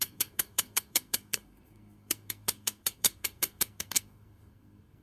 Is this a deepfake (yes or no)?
yes